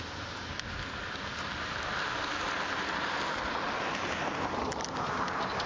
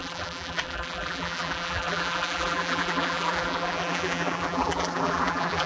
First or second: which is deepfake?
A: second